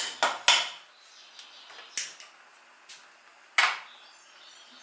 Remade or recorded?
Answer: recorded